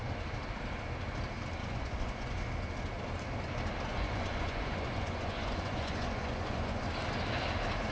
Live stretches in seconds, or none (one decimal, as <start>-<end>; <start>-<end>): 0.0-1.6; 2.4-3.9; 6.9-7.9